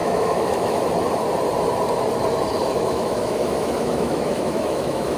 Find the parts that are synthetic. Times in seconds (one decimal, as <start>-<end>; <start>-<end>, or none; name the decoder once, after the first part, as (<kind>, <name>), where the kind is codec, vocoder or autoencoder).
0.0-0.9 (autoencoder, DAC-VAE); 2.6-5.2